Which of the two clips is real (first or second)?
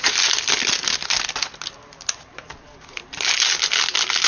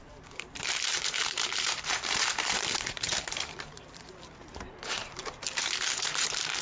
first